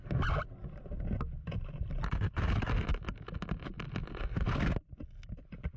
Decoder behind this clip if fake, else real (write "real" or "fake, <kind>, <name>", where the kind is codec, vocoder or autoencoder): real